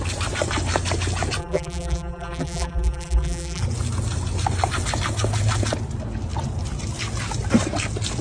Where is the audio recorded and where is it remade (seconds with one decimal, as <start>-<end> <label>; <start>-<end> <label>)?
0.0-1.4 recorded; 1.4-3.6 remade; 3.6-8.2 recorded